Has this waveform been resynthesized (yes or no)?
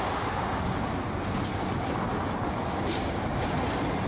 no